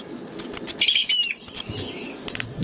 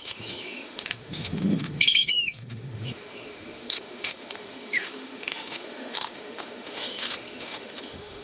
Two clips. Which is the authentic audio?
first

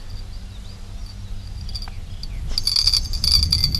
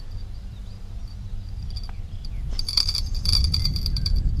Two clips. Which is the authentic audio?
first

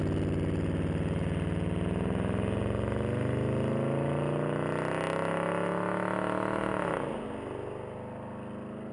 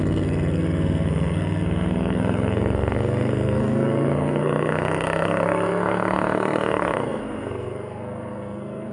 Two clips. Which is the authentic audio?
first